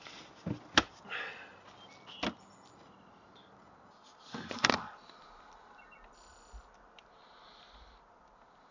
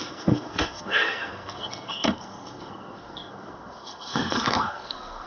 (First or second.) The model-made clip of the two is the second